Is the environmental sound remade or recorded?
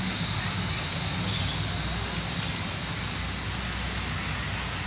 recorded